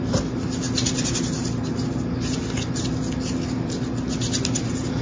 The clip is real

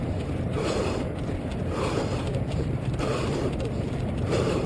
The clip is fake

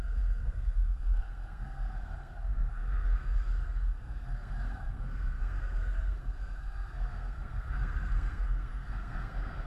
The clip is fake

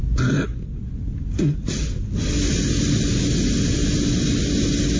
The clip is real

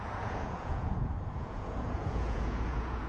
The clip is fake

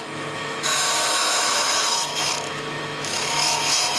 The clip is fake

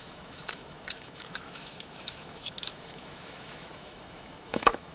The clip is fake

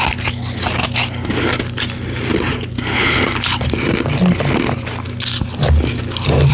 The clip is real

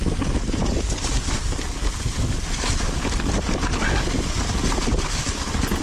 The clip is real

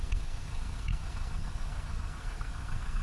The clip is fake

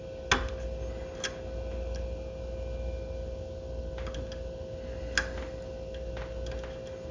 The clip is real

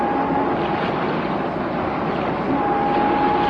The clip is real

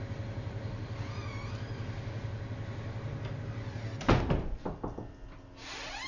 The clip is real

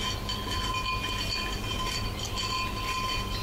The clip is real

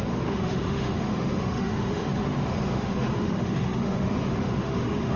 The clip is fake